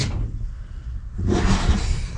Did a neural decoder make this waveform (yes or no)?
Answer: no